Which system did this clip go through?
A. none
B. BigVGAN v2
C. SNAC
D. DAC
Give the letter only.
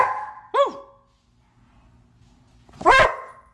A